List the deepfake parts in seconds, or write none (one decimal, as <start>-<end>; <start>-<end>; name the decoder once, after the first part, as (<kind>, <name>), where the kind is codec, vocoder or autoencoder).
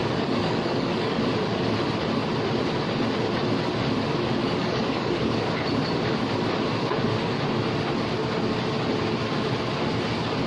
0.0-1.2 (codec, DAC); 4.4-5.5